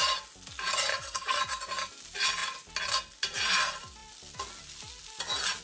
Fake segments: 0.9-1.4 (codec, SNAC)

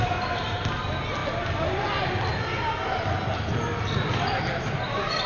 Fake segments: none

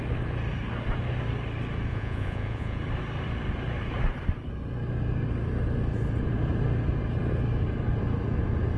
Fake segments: 1.9-2.8 (vocoder, Vocos)

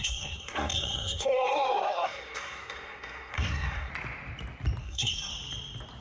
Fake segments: 0.0-3.9 (codec, SNAC); 4.8-5.3

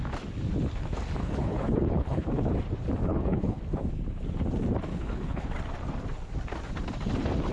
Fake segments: 1.2-2.5 (codec, HILCodec); 3.0-3.6; 4.9-5.5